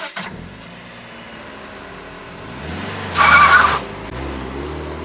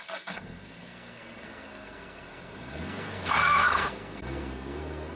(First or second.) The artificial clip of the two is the second